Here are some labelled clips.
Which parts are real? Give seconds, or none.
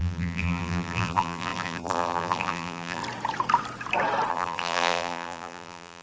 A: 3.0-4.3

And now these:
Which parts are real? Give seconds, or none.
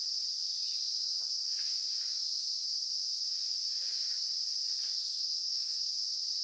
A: 0.0-5.0; 5.9-6.4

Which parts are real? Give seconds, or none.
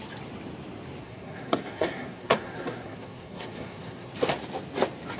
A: 0.0-1.0; 4.1-5.2